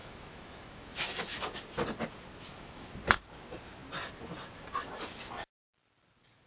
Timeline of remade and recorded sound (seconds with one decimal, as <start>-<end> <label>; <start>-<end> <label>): 0.0-1.5 remade; 1.5-2.5 recorded; 2.5-3.0 remade; 3.0-6.5 recorded